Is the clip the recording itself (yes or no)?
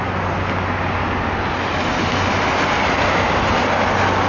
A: yes